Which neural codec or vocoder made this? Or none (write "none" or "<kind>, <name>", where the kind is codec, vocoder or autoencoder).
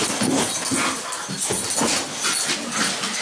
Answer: none